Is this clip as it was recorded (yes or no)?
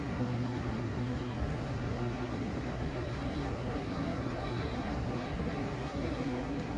no